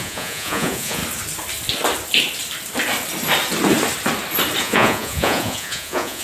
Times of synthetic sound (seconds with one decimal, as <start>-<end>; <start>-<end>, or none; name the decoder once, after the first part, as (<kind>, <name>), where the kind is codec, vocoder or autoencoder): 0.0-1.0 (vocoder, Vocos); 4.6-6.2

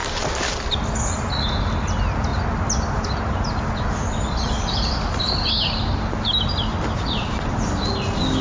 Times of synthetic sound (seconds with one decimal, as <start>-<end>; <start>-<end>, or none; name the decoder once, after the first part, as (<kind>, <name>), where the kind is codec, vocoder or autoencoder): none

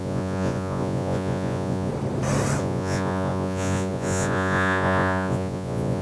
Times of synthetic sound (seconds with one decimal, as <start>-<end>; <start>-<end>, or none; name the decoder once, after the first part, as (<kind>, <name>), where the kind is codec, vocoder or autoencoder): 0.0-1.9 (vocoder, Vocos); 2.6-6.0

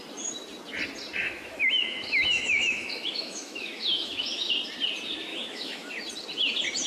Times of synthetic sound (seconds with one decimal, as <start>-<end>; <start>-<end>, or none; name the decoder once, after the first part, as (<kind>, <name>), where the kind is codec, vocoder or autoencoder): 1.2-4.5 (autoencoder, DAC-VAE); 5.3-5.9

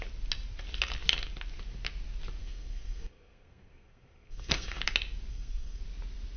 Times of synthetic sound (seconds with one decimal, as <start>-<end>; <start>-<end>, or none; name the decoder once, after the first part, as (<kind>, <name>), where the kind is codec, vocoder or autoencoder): 2.4-4.8 (codec, SNAC); 5.3-5.8